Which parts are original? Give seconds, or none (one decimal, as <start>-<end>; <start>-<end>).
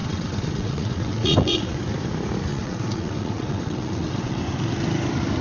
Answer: 1.8-2.5; 4.4-5.4